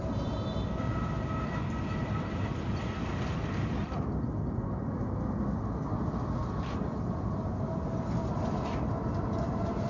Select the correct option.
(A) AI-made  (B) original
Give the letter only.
B